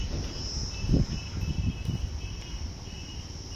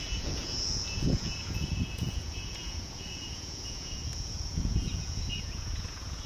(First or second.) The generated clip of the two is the second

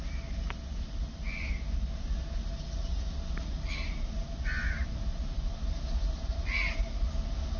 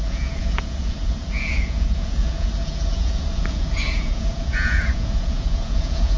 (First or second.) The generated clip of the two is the second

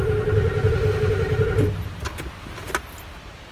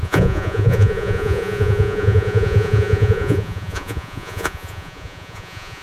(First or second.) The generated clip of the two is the second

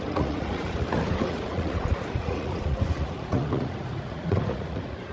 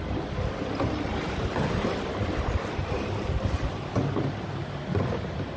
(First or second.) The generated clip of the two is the first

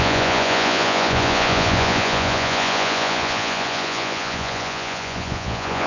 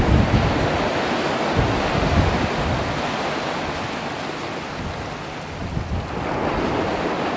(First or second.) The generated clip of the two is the first